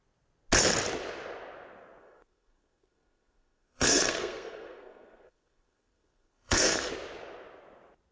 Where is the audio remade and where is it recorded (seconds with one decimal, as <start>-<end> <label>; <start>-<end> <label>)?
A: 0.0-2.0 recorded; 2.0-6.9 remade; 6.9-8.1 recorded